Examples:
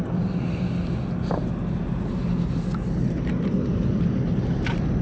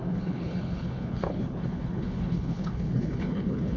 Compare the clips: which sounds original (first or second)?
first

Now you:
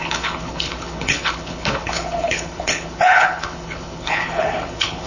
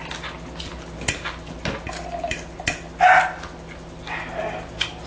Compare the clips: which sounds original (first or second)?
second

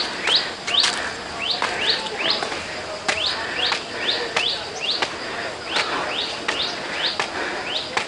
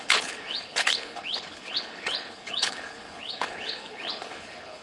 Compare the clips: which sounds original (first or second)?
first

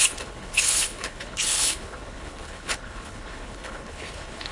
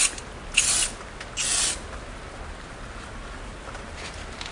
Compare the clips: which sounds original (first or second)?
second